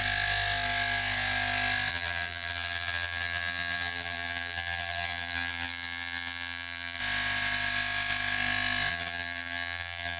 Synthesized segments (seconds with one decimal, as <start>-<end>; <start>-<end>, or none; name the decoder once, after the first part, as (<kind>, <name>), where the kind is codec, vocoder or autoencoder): 1.9-7.0 (vocoder, BigVGAN v2); 8.9-10.2